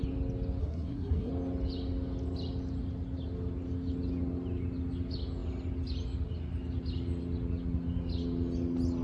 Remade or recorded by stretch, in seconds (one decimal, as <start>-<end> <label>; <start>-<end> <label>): 0.0-0.6 recorded; 0.6-1.3 remade; 1.3-9.0 recorded